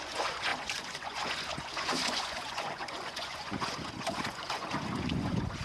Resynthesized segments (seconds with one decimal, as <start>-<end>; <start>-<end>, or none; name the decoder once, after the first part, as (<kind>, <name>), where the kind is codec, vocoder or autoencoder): 0.0-5.6 (vocoder, Vocos)